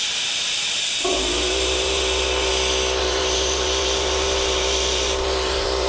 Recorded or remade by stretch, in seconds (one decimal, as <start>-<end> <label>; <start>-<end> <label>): 0.0-2.5 remade; 2.5-3.0 recorded; 3.0-5.9 remade

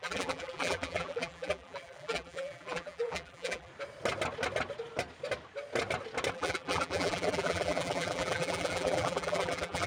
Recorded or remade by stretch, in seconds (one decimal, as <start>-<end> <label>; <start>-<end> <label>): 0.0-3.7 remade; 3.7-6.3 recorded; 6.3-9.9 remade

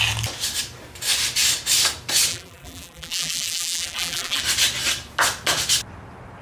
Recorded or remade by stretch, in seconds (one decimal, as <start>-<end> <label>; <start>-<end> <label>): 0.0-2.3 recorded; 2.3-4.4 remade; 4.4-6.4 recorded

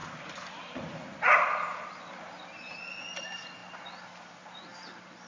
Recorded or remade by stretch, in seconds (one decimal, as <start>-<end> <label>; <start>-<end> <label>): 0.0-5.3 recorded